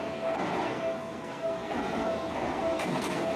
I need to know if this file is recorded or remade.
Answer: remade